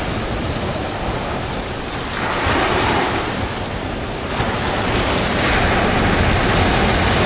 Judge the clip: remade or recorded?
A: recorded